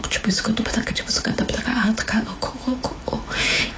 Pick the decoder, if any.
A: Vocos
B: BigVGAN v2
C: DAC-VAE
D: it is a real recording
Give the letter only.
C